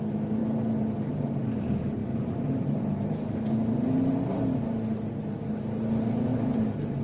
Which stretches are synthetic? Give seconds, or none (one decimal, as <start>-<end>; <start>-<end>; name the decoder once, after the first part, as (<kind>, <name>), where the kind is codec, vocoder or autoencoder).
2.0-2.8 (vocoder, BigVGAN v2)

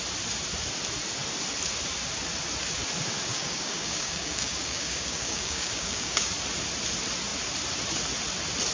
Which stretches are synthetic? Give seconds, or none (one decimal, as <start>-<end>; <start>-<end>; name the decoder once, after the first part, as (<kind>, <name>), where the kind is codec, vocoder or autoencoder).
3.3-6.3 (codec, DAC)

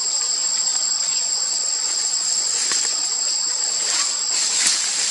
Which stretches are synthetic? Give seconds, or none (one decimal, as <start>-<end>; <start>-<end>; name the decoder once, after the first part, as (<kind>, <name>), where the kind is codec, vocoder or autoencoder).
1.1-3.5 (vocoder, Vocos)

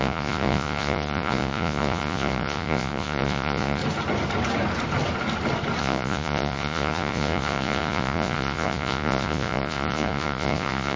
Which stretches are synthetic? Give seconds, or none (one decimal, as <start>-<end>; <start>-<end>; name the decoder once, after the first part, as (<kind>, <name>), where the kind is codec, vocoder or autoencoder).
0.0-3.8 (vocoder, Vocos); 5.8-11.0

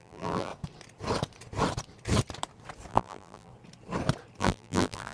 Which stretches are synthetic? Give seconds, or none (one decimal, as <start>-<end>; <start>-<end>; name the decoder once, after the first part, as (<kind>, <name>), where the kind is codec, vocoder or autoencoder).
0.0-0.5 (vocoder, BigVGAN v2); 2.9-3.5; 4.4-5.1

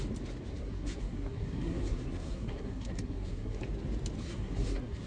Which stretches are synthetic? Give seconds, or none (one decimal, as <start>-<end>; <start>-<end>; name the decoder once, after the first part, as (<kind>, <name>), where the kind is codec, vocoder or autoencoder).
0.5-3.6 (codec, SNAC); 4.2-5.1

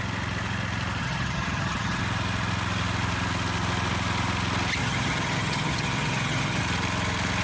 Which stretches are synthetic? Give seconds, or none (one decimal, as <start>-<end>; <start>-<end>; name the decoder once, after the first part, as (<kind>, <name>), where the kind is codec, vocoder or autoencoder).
1.0-2.0 (vocoder, HiFi-GAN); 4.8-6.6

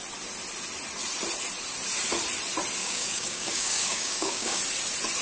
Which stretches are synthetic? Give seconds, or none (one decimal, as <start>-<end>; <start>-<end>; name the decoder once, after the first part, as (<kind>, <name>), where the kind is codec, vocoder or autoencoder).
2.8-4.6 (codec, DAC)